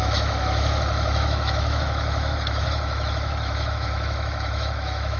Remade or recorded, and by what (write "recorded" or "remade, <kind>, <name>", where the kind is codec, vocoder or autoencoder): remade, autoencoder, DAC-VAE